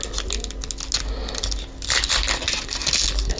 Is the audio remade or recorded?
recorded